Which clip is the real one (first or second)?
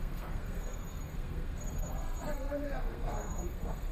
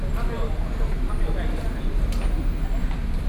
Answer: second